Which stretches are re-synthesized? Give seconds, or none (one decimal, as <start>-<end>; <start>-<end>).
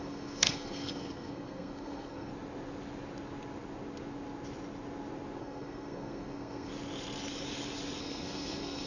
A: 0.0-2.3; 5.4-6.7; 8.0-8.9